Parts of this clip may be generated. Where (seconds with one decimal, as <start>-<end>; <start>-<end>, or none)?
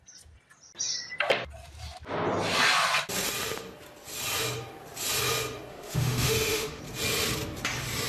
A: 5.7-6.8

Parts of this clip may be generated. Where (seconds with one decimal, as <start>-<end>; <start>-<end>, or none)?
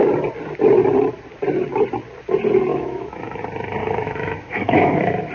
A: 2.7-3.4; 3.8-5.3